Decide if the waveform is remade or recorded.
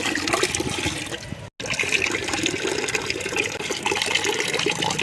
recorded